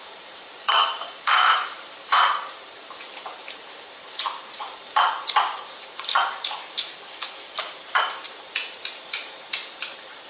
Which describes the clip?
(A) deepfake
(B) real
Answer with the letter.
A